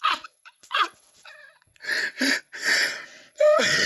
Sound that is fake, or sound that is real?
fake